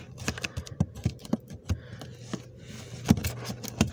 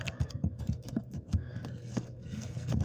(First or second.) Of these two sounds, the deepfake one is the second